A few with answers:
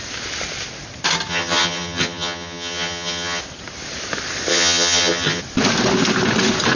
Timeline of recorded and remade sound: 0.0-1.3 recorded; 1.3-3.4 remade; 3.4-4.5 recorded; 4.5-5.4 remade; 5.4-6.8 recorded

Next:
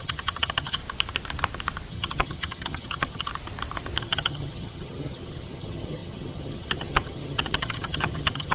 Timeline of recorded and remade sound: 0.0-0.8 remade; 0.8-1.9 recorded; 1.9-3.3 remade; 3.3-4.0 recorded; 4.0-8.5 remade

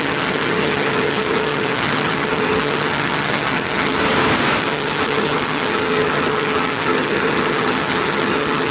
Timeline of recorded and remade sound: 0.0-4.0 remade; 4.0-4.6 recorded; 4.6-8.7 remade

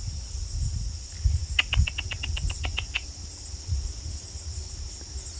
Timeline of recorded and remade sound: 0.0-5.4 recorded